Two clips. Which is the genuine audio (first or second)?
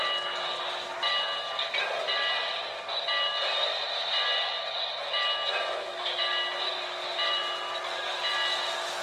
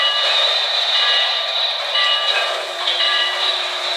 first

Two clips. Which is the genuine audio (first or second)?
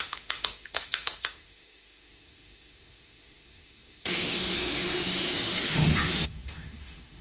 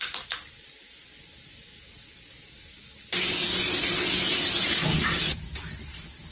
second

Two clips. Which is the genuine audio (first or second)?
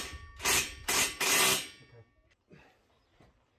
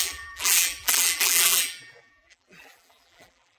first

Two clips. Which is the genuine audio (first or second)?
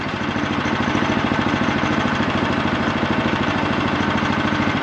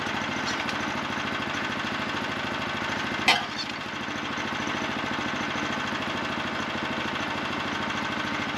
second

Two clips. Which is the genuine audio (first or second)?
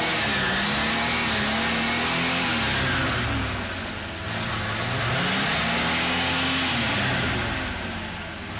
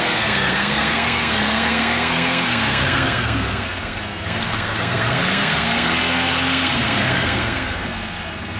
first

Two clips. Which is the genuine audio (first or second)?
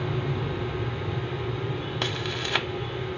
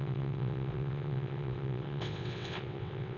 first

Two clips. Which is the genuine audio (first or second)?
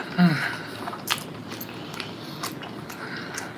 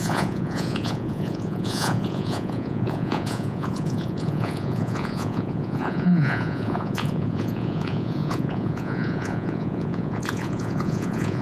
first